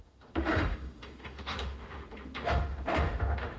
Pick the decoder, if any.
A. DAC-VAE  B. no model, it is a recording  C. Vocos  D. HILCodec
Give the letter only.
A